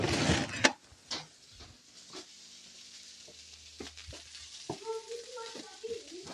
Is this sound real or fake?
real